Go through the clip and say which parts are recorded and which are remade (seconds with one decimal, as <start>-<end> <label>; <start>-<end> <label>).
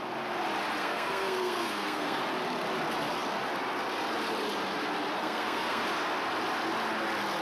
0.0-0.8 recorded; 0.8-2.2 remade; 2.2-5.2 recorded; 5.2-5.8 remade; 5.8-7.4 recorded